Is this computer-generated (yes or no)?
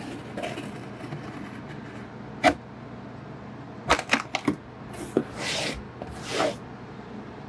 no